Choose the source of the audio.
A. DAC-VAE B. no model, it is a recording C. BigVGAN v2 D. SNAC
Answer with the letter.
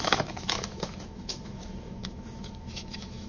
A